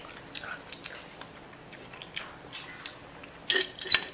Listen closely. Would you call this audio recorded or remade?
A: recorded